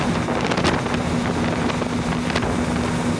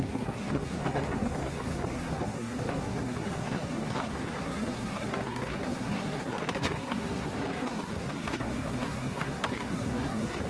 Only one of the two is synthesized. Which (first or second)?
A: second